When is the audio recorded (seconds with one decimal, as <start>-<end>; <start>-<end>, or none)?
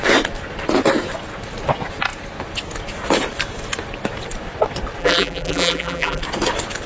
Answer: 0.0-5.0; 6.2-6.9